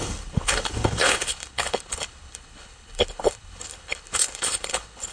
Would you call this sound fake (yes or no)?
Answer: yes